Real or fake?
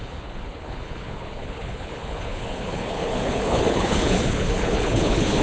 fake